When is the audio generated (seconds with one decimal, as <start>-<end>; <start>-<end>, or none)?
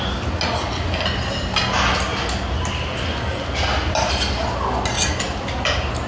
none